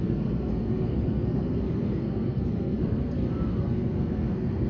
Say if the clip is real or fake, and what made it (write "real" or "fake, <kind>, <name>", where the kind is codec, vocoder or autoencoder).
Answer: fake, codec, SNAC